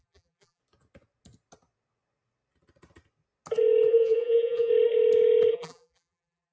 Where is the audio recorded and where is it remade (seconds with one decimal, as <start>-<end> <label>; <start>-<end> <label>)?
0.0-0.6 remade; 0.6-3.9 recorded; 3.9-4.7 remade; 4.7-5.5 recorded; 5.5-6.5 remade